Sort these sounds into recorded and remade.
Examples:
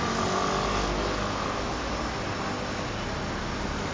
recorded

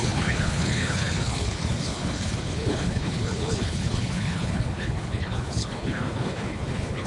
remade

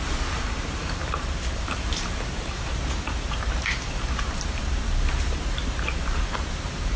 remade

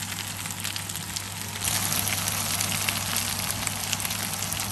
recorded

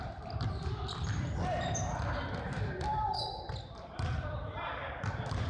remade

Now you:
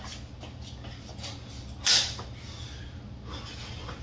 recorded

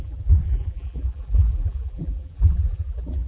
remade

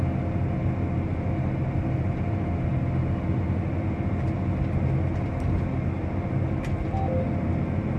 recorded